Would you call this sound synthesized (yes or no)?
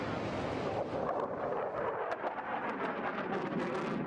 no